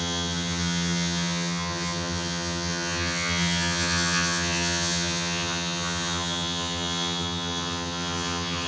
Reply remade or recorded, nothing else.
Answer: remade